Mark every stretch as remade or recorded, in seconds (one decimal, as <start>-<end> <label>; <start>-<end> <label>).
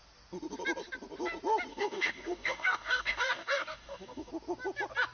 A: 0.0-1.7 recorded; 1.7-4.3 remade; 4.3-5.1 recorded